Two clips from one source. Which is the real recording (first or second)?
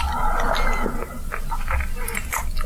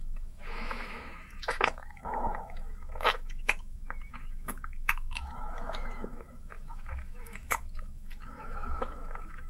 first